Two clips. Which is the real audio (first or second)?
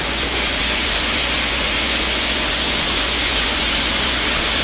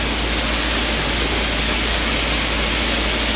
second